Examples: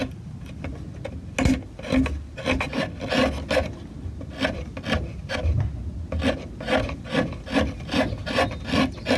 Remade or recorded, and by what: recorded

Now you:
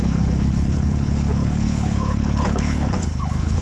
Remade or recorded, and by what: remade, codec, HILCodec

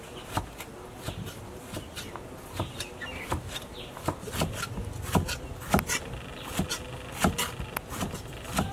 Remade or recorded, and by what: recorded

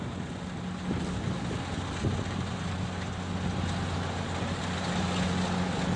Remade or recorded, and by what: recorded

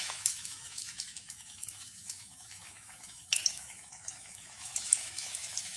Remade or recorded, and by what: remade, autoencoder, DAC-VAE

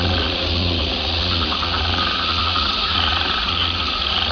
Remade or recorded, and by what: remade, vocoder, Vocos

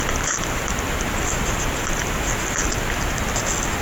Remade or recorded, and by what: recorded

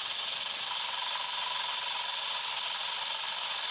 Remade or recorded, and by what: remade, vocoder, BigVGAN v2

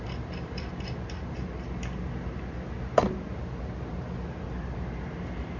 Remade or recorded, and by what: recorded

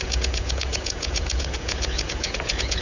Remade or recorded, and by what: remade, vocoder, Vocos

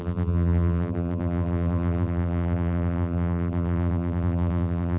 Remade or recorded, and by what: remade, vocoder, BigVGAN v2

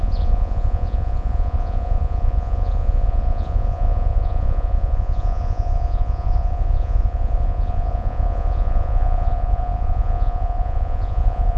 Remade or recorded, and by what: remade, vocoder, Vocos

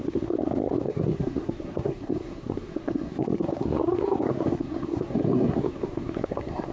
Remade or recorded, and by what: remade, codec, SNAC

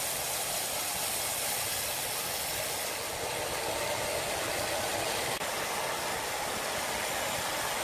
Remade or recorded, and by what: recorded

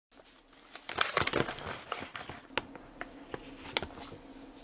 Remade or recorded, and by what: recorded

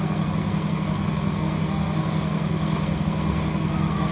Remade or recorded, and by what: remade, codec, SNAC